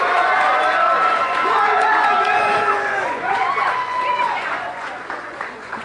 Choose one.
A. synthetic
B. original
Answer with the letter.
A